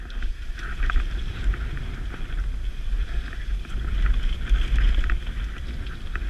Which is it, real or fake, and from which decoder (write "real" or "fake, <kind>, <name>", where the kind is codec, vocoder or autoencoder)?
real